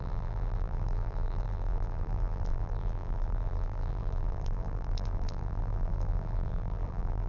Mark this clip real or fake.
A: fake